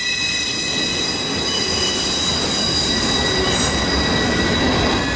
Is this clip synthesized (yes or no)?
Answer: no